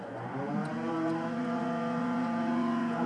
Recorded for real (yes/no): no